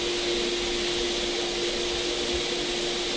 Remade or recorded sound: recorded